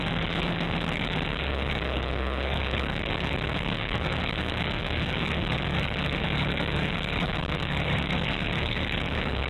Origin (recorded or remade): remade